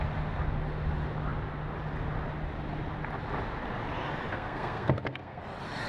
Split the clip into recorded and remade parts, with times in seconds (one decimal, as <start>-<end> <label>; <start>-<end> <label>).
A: 0.0-4.3 recorded; 4.3-5.4 remade; 5.4-5.9 recorded